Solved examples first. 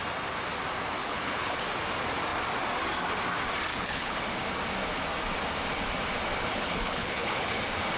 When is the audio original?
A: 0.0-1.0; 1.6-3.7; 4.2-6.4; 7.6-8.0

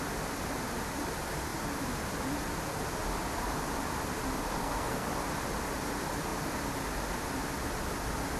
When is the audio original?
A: 0.0-4.6; 5.1-8.4

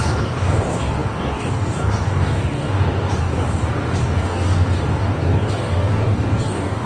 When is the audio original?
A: none

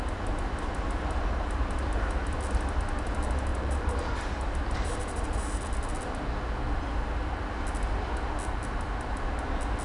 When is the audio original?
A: 0.0-3.5; 5.6-9.8

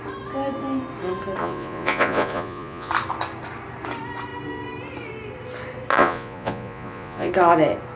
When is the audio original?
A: 0.0-1.4; 2.9-5.9; 7.3-8.0